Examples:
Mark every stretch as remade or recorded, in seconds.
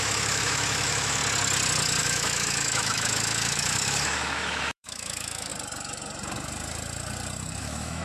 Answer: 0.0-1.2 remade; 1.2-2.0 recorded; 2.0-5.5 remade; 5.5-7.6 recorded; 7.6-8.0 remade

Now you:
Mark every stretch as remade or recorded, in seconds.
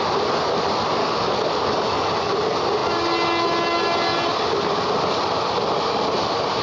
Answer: 0.0-1.0 recorded; 1.0-2.1 remade; 2.1-6.6 recorded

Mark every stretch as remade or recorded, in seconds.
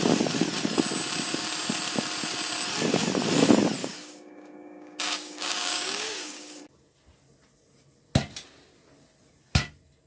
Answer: 0.0-3.8 recorded; 3.8-6.6 remade; 6.6-10.1 recorded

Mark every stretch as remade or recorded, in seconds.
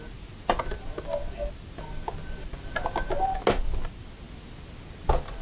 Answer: 0.0-5.4 recorded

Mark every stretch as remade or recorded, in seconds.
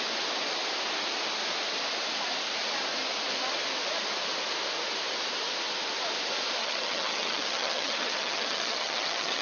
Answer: 0.0-6.6 recorded; 6.6-9.4 remade